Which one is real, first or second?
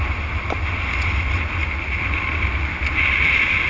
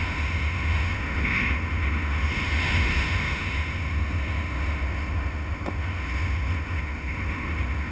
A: first